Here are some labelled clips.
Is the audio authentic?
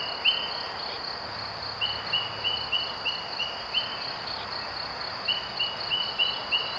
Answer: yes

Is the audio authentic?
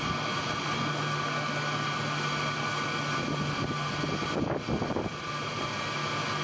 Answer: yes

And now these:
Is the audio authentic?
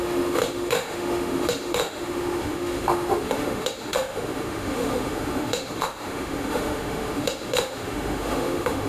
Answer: no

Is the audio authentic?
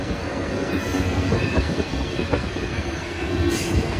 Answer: no